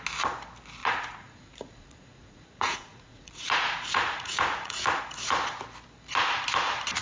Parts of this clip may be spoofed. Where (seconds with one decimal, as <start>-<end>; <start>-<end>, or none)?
0.8-5.0